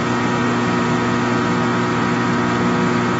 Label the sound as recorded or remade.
remade